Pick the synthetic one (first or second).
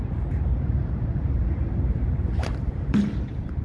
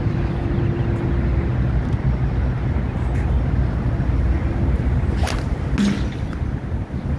first